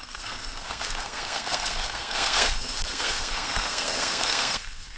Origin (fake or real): fake